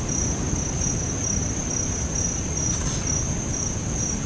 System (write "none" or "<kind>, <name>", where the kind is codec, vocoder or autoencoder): none